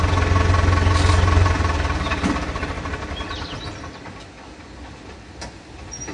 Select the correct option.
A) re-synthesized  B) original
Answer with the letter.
B